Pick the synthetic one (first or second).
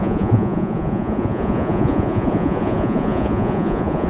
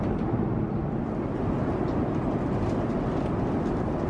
first